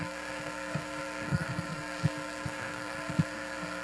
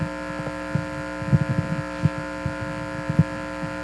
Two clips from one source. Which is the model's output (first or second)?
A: first